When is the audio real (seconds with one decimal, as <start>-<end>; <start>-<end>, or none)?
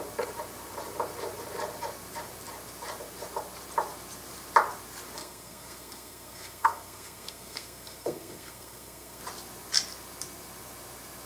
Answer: 0.0-5.2; 9.2-11.3